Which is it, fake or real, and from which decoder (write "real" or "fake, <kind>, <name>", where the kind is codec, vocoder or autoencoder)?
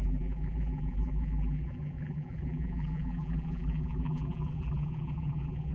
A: fake, vocoder, BigVGAN v2